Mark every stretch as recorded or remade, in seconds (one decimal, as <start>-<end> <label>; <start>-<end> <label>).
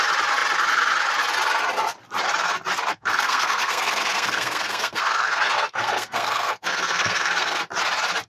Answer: 0.0-2.9 recorded; 2.9-7.6 remade; 7.6-8.3 recorded